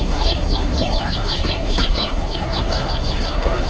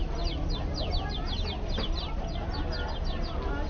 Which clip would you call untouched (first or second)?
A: second